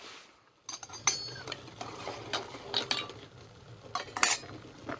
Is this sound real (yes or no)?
yes